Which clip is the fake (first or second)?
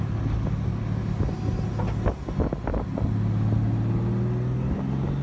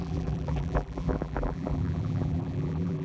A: second